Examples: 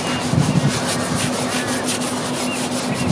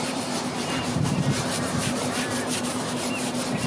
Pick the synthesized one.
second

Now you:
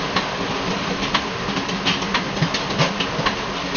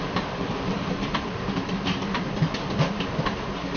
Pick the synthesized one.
second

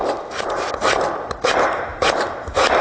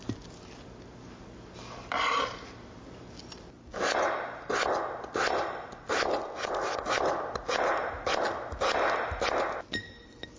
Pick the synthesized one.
first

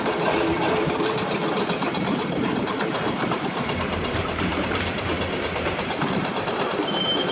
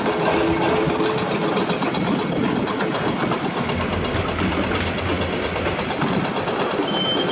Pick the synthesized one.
first